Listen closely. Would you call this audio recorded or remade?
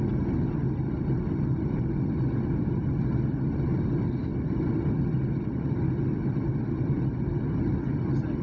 recorded